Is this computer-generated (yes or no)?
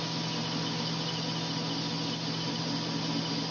no